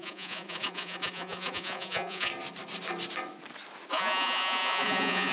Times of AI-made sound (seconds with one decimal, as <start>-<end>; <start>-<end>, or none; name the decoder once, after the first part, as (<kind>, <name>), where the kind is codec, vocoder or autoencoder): 0.0-2.3 (vocoder, Vocos); 3.9-5.3